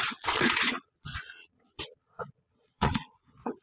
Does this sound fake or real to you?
fake